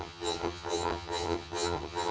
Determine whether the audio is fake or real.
fake